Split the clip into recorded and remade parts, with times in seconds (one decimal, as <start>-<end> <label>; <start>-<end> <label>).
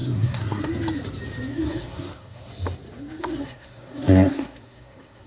0.0-0.6 remade; 0.6-1.5 recorded; 1.5-2.5 remade; 2.5-3.2 recorded; 3.2-5.3 remade